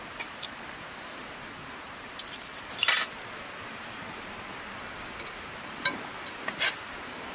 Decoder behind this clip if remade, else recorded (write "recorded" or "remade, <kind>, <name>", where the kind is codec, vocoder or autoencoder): remade, vocoder, BigVGAN v2